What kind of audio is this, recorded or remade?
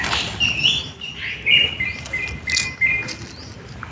recorded